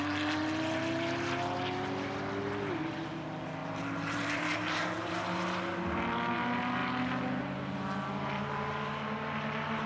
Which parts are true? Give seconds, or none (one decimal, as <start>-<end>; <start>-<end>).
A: 0.0-3.6; 5.1-9.9